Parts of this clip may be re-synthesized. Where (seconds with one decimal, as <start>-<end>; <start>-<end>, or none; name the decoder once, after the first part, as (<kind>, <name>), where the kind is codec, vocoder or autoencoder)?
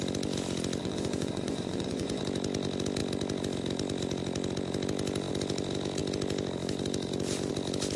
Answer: 0.8-2.2 (vocoder, Vocos)